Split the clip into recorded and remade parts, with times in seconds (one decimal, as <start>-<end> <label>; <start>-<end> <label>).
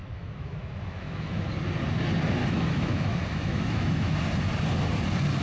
0.0-1.5 remade; 1.5-2.4 recorded; 2.4-4.2 remade; 4.2-5.4 recorded